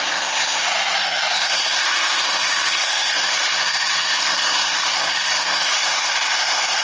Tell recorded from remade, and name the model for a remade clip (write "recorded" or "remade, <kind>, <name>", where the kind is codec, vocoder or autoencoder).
remade, codec, SNAC